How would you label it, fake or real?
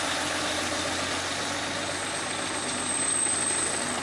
real